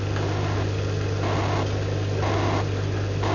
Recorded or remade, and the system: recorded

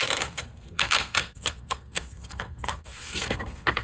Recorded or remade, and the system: remade, codec, SNAC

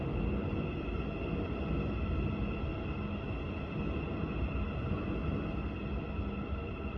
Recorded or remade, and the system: recorded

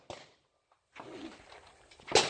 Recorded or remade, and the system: recorded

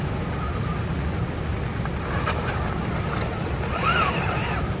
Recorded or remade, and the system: recorded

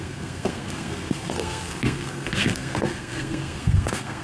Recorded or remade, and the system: remade, codec, SNAC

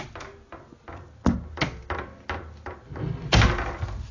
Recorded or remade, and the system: recorded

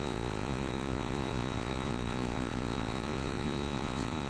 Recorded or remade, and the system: remade, vocoder, Vocos